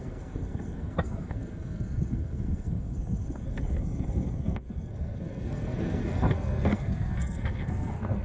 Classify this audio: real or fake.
fake